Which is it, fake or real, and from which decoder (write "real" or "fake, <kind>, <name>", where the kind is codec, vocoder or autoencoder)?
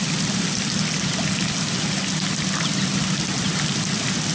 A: real